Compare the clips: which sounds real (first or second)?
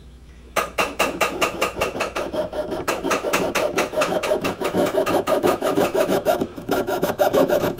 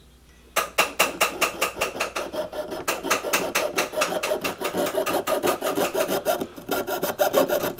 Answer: second